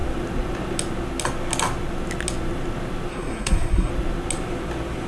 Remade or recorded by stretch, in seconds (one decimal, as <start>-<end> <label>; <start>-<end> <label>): 0.0-3.1 recorded; 3.1-3.9 remade; 3.9-5.1 recorded